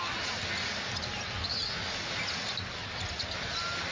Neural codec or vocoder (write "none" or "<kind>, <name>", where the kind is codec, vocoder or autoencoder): none